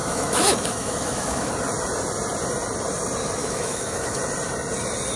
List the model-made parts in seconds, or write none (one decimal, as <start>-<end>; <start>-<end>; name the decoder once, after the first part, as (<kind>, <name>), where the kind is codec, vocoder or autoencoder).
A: 0.0-1.5 (autoencoder, DAC-VAE); 3.4-4.2